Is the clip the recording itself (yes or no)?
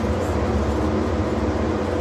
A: yes